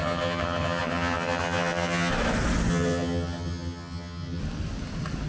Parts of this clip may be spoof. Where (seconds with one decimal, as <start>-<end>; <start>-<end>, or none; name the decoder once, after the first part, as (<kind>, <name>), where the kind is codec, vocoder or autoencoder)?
0.0-2.1 (vocoder, HiFi-GAN); 2.7-4.4